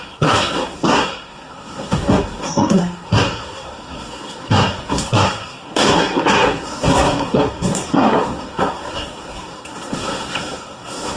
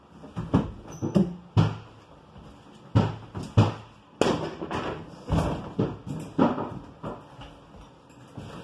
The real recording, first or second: second